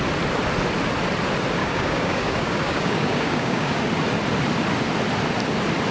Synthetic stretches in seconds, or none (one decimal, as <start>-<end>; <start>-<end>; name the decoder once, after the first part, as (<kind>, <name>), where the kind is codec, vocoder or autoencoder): 1.6-3.8 (codec, DAC)